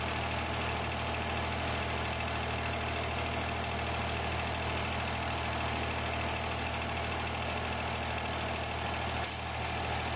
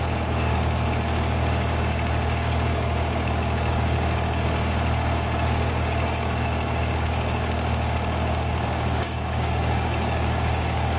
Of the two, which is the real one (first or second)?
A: first